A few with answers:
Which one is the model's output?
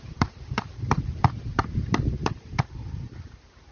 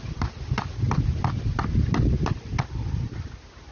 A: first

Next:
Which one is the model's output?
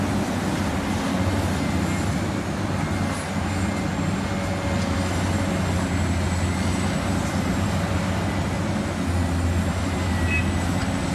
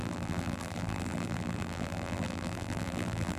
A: second